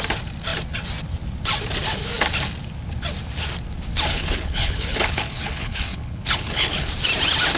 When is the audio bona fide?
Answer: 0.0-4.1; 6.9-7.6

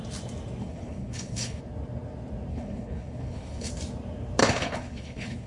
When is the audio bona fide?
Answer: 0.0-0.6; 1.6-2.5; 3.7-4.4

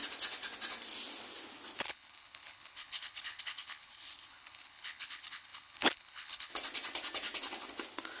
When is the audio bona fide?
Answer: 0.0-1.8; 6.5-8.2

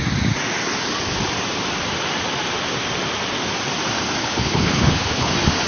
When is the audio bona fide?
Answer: 0.0-4.2; 5.3-5.7